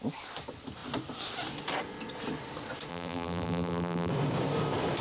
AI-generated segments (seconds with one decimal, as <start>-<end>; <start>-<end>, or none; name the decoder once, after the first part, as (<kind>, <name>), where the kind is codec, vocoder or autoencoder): 2.9-4.1 (vocoder, BigVGAN v2)